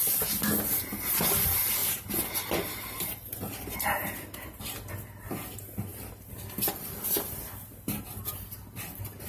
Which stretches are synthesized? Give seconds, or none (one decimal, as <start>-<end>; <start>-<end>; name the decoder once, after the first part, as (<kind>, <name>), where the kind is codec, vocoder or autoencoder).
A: none